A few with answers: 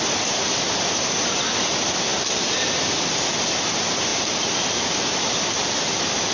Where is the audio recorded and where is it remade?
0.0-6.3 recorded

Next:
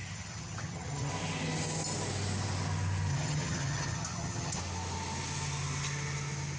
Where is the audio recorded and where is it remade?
0.0-1.1 remade; 1.1-3.1 recorded; 3.1-4.6 remade; 4.6-6.6 recorded

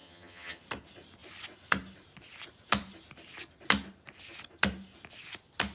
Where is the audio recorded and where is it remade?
0.0-0.6 remade; 0.6-5.7 recorded